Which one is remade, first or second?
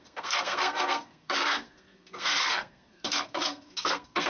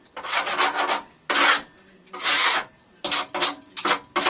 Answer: first